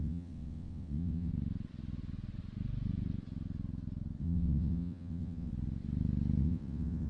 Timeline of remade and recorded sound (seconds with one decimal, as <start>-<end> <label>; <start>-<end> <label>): 0.0-1.3 remade; 1.3-4.2 recorded; 4.2-5.5 remade; 5.5-6.4 recorded; 6.4-7.1 remade